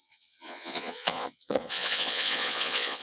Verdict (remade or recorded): remade